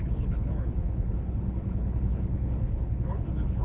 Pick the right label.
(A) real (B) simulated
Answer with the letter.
B